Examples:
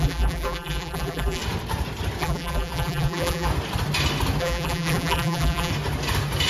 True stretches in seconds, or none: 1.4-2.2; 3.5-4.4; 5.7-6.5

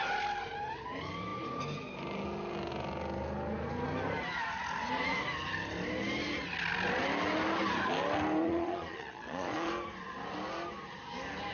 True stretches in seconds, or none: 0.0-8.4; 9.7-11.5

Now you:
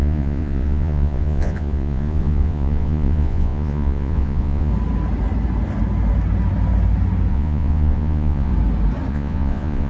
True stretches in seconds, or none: 4.7-7.3; 8.5-9.1